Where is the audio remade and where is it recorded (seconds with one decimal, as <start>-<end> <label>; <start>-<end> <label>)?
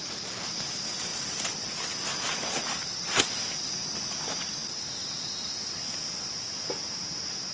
0.0-7.5 recorded